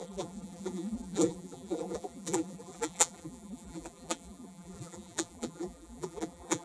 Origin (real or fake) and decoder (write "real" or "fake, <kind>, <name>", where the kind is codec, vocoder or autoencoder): fake, vocoder, BigVGAN v2